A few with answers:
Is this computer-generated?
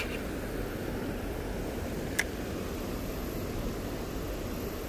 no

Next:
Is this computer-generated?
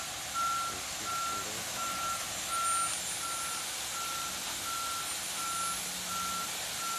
no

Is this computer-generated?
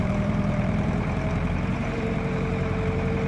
yes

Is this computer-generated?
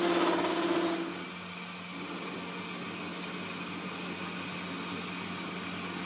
no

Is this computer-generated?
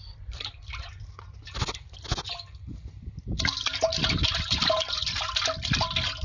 no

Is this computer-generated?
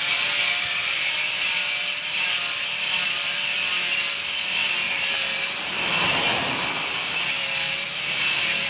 yes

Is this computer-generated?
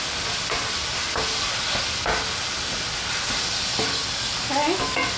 no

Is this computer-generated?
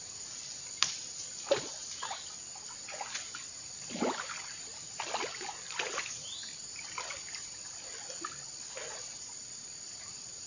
no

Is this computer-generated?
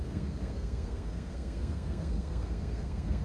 yes